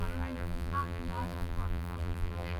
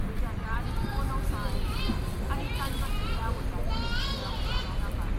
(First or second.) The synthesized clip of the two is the first